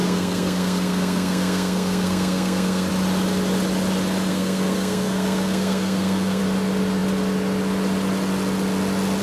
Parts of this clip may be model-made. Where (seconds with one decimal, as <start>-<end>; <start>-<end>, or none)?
0.0-2.9; 4.3-6.4